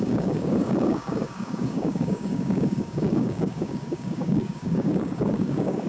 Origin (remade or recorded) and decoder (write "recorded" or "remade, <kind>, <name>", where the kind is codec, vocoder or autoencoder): remade, codec, DAC